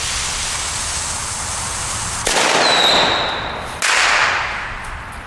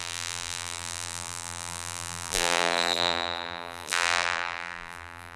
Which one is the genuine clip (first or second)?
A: first